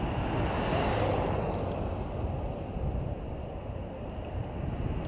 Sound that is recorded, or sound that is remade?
recorded